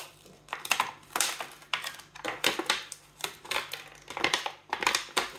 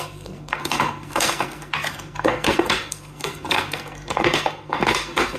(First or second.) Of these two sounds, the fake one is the second